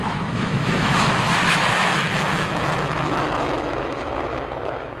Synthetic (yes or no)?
yes